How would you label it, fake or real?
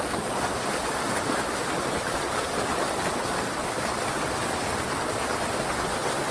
real